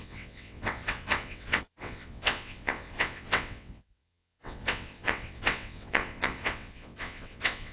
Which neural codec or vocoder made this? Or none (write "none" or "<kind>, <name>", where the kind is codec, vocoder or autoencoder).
vocoder, WaveNeXt